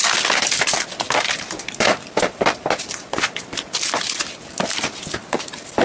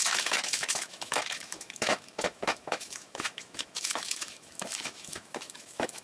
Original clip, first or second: first